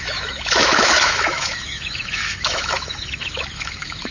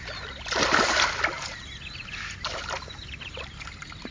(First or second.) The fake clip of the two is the first